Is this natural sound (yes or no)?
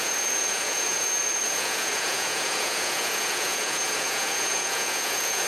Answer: no